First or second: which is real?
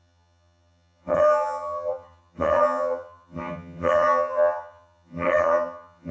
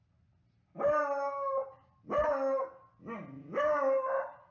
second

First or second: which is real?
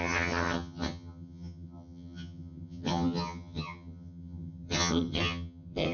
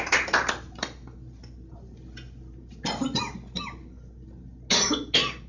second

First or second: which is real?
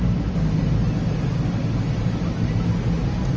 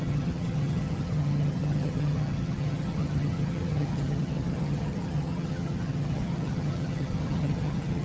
first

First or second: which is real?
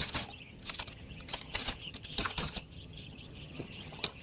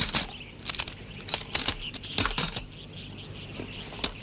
second